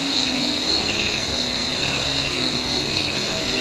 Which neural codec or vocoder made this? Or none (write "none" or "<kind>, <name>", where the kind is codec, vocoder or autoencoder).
codec, SNAC